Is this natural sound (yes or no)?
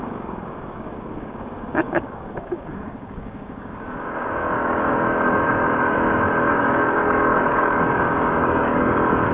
no